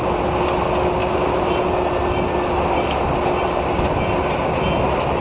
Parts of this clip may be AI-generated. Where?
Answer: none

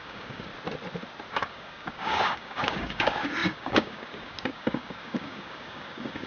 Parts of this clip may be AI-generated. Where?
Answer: 0.0-0.5; 1.3-6.3

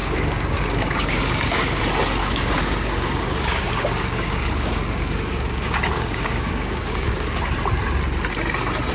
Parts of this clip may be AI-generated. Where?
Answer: 0.0-1.8; 2.2-7.4

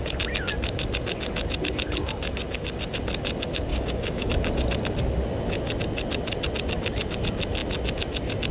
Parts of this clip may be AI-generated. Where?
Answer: 3.7-4.3